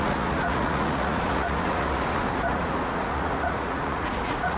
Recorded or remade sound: remade